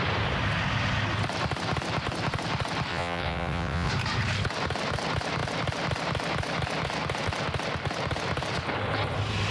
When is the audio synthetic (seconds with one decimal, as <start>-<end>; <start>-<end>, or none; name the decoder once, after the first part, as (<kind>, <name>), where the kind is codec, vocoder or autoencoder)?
2.9-3.9 (vocoder, WaveNeXt)